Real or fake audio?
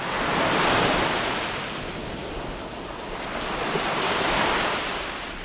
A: real